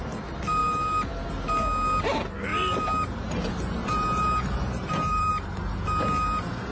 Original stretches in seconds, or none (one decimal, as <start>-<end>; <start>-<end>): 0.0-0.6; 1.3-2.5; 5.3-6.7